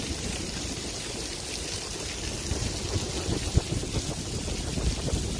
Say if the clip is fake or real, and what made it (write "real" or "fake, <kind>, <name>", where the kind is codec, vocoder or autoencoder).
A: real